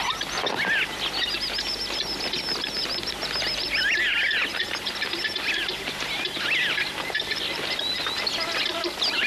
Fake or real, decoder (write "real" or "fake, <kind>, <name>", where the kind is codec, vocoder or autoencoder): real